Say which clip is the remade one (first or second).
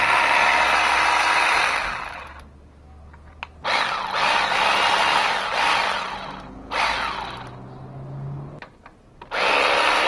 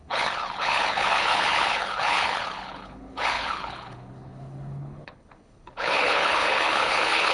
second